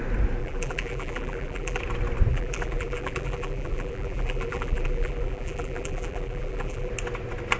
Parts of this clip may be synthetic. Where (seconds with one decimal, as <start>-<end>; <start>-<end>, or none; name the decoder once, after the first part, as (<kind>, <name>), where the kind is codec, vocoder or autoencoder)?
0.4-1.8 (vocoder, BigVGAN v2); 2.3-6.9

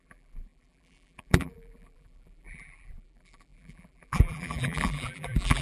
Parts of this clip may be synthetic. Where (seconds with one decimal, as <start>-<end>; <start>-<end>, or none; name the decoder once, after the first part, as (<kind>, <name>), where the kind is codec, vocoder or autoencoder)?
0.0-5.6 (vocoder, BigVGAN v2)

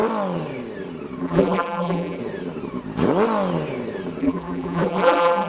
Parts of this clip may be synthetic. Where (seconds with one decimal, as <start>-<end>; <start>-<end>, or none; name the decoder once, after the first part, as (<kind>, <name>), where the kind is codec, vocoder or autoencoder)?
1.2-2.2 (vocoder, BigVGAN v2); 4.2-5.5

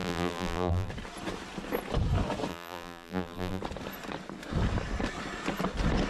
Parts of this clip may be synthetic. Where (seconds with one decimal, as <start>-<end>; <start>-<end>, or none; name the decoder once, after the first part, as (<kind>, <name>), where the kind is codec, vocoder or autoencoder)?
0.0-0.9 (vocoder, BigVGAN v2); 2.5-3.6

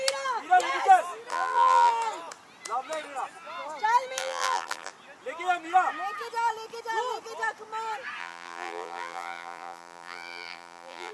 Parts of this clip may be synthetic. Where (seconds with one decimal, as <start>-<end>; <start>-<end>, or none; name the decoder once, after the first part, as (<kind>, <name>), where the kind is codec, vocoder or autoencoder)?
1.3-1.9 (vocoder, BigVGAN v2); 4.2-4.9; 8.2-11.1

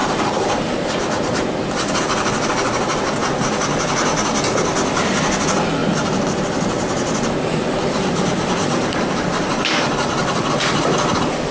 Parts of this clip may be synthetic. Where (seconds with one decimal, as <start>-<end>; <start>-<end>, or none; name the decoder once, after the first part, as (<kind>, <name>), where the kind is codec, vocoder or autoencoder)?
0.0-2.0 (vocoder, BigVGAN v2); 5.8-10.5